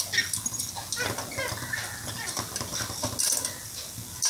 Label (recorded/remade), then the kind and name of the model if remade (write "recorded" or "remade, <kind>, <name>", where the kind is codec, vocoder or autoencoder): recorded